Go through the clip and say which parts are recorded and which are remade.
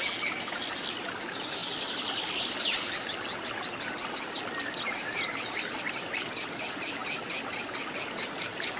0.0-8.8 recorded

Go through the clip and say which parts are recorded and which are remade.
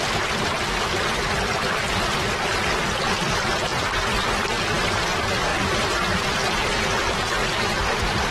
0.0-3.7 recorded; 3.7-4.3 remade; 4.3-5.5 recorded; 5.5-7.9 remade; 7.9-8.3 recorded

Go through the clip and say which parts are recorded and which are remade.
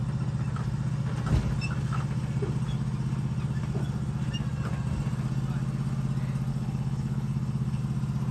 0.0-6.5 recorded; 6.5-7.8 remade; 7.8-8.3 recorded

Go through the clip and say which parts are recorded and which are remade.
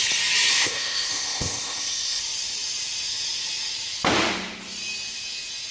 0.0-0.5 recorded; 0.5-2.2 remade; 2.2-5.7 recorded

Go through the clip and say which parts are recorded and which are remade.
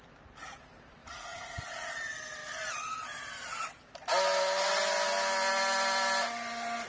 0.0-1.0 recorded; 1.0-1.9 remade; 1.9-6.9 recorded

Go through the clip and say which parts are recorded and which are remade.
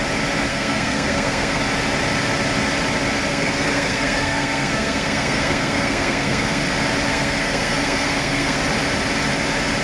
0.0-0.5 recorded; 0.5-1.6 remade; 1.6-3.3 recorded; 3.3-6.6 remade; 6.6-7.1 recorded; 7.1-8.6 remade; 8.6-9.8 recorded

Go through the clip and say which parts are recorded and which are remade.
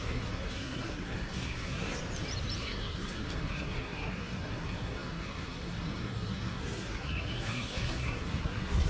0.0-2.0 remade; 2.0-2.6 recorded; 2.6-8.9 remade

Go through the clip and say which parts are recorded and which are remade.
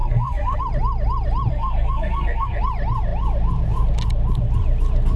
0.0-0.6 remade; 0.6-1.5 recorded; 1.5-2.6 remade; 2.6-5.2 recorded